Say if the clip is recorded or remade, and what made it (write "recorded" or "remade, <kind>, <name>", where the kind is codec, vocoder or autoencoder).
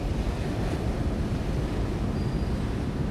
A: recorded